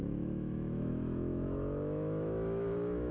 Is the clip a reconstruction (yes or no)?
yes